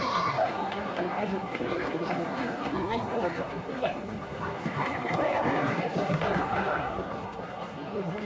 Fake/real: fake